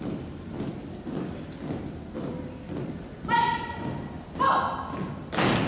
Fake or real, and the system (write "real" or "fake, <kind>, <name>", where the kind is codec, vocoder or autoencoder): real